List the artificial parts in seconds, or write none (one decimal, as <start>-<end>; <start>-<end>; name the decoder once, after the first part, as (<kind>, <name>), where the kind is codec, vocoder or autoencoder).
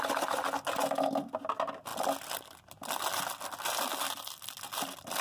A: none